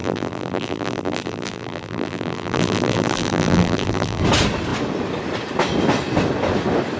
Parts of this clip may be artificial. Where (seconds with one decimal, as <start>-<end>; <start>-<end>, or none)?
0.0-4.2